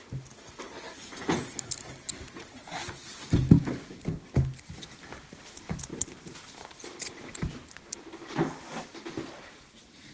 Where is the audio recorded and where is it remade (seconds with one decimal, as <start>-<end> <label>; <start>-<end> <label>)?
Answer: 0.0-10.1 recorded